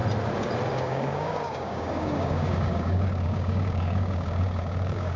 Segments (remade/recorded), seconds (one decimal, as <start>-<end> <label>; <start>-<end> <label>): 0.0-0.7 recorded; 0.7-5.2 remade